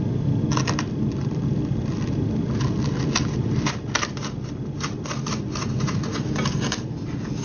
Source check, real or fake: real